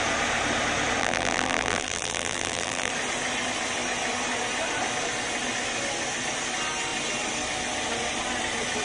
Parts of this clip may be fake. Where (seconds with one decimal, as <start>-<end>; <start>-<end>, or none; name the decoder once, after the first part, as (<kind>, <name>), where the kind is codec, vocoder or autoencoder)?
1.0-2.9 (vocoder, BigVGAN v2)